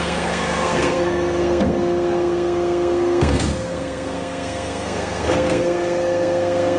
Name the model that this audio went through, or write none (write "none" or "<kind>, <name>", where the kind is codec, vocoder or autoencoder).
codec, SNAC